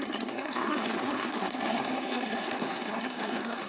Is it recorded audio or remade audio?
remade